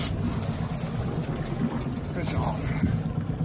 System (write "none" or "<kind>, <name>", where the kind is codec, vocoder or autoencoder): none